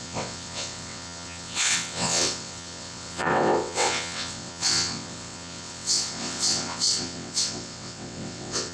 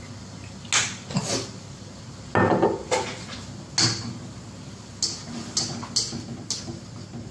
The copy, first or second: first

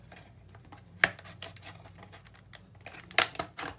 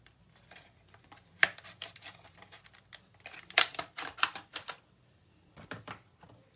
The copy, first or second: second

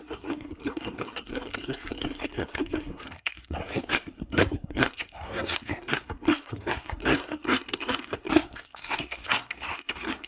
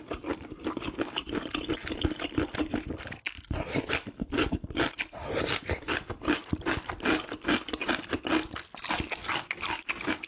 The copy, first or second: first